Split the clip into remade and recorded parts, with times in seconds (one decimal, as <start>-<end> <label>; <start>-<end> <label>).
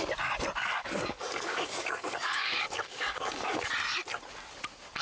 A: 0.0-0.6 recorded; 0.6-3.6 remade; 3.6-5.0 recorded